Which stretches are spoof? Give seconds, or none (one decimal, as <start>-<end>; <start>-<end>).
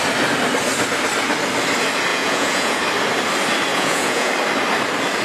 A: 2.1-2.8; 3.7-4.3